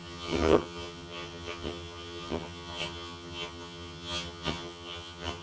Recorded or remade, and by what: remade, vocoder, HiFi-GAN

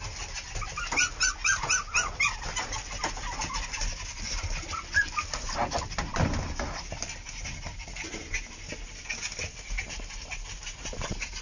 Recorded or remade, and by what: recorded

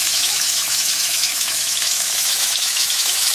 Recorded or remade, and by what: remade, autoencoder, DAC-VAE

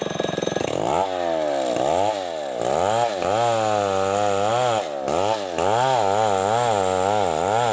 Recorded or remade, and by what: recorded